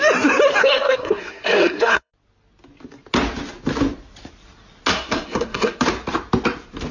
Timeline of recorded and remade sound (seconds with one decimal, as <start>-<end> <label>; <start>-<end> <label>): 0.0-0.6 recorded; 0.6-2.1 remade; 2.1-4.9 recorded; 4.9-5.8 remade; 5.8-6.9 recorded